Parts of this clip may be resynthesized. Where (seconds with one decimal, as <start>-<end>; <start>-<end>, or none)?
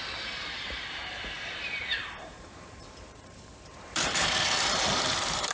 0.0-5.5